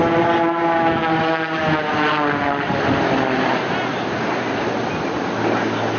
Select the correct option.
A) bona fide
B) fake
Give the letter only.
A